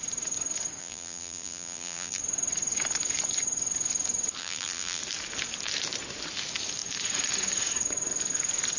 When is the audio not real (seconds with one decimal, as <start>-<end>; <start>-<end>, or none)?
0.8-2.2; 4.4-5.0